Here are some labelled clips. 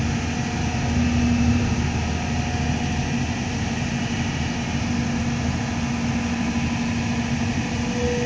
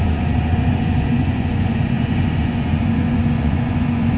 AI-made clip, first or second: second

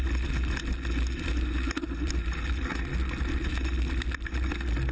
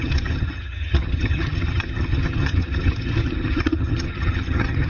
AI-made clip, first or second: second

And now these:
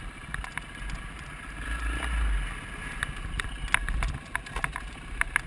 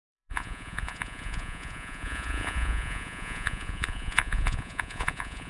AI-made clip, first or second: second